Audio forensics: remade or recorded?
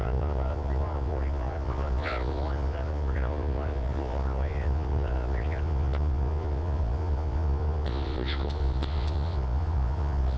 remade